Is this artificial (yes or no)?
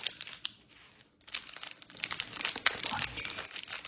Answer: no